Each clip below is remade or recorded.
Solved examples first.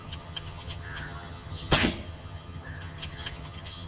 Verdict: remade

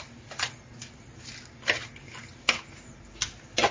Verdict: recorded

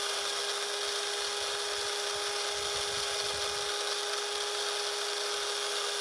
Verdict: recorded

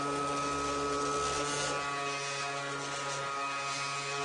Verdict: recorded